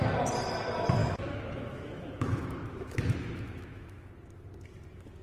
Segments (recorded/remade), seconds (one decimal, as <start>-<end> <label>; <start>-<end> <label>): 0.0-1.0 recorded; 1.0-4.1 remade; 4.1-5.2 recorded